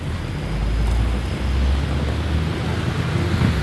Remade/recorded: recorded